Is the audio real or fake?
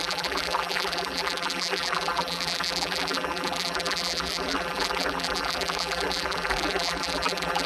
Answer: fake